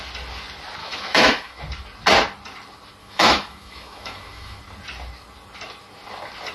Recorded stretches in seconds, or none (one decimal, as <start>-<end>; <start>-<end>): 0.0-0.8; 1.6-3.0; 4.6-6.5